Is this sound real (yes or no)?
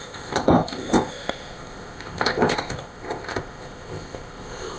no